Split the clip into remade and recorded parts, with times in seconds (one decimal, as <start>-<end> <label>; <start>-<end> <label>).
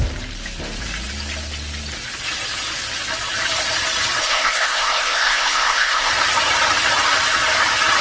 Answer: 0.0-4.2 recorded; 4.2-6.1 remade; 6.1-8.0 recorded